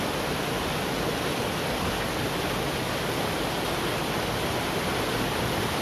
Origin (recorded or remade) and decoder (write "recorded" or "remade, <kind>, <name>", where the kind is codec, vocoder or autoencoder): recorded